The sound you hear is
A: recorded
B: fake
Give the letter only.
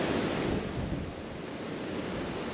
A